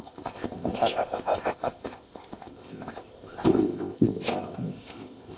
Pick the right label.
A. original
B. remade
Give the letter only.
B